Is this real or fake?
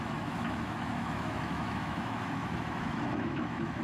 fake